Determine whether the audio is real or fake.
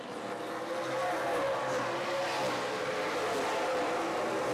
real